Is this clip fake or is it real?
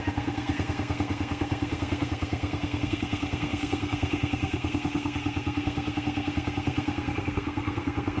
fake